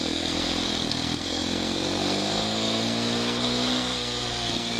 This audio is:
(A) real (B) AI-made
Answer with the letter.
B